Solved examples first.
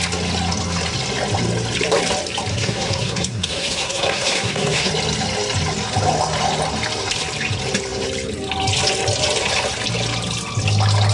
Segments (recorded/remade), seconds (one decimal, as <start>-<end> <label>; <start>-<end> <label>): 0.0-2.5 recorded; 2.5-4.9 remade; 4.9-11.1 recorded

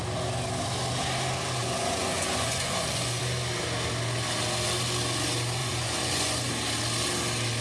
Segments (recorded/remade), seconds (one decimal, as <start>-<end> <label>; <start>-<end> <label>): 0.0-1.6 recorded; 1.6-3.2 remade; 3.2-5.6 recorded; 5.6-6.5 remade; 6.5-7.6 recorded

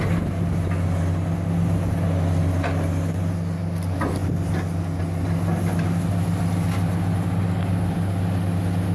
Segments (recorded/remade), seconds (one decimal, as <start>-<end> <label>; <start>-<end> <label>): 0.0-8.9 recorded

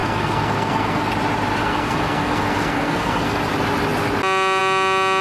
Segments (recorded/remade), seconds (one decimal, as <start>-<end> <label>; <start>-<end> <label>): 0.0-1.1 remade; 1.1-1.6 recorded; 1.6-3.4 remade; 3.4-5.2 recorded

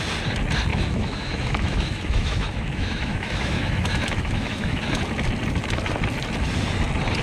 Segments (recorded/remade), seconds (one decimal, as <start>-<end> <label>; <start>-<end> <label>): 0.0-0.7 recorded; 0.7-4.8 remade; 4.8-7.2 recorded

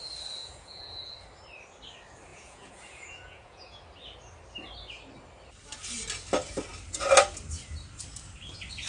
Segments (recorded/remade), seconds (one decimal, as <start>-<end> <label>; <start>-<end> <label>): 0.0-0.4 recorded; 0.4-1.1 remade; 1.1-2.3 recorded; 2.3-3.8 remade; 3.8-8.9 recorded

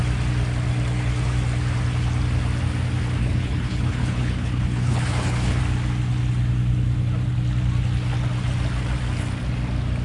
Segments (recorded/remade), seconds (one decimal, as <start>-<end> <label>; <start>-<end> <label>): 0.0-3.2 recorded; 3.2-5.6 remade; 5.6-10.0 recorded

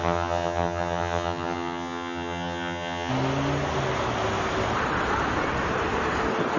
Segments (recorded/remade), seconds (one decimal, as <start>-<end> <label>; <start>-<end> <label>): 0.0-3.1 remade; 3.1-6.6 recorded